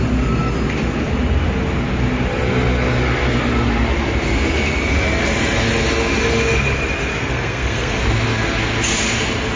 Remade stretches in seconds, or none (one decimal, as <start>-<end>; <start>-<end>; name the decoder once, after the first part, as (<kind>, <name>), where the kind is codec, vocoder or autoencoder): 7.2-8.0 (codec, SNAC)